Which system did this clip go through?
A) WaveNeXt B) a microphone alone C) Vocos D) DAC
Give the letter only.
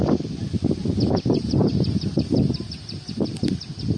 B